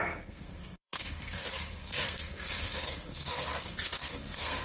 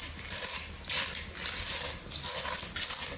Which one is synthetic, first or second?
first